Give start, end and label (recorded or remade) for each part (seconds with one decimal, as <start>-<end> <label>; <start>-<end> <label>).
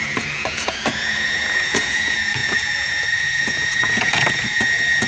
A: 0.0-5.1 remade